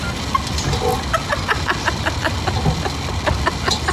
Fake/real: real